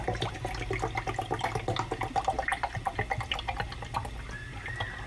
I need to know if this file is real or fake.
real